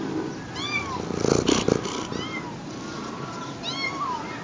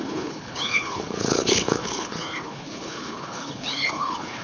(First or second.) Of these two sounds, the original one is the first